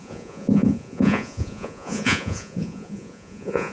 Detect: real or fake fake